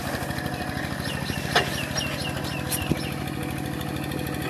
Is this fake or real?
real